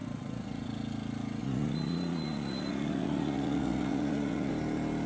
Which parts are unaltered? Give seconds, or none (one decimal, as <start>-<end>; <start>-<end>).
0.6-1.4; 4.5-5.1